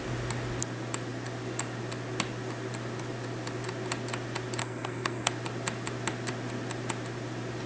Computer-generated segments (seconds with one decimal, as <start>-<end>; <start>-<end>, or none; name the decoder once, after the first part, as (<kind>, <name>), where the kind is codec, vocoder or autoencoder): 4.6-5.3 (codec, SNAC)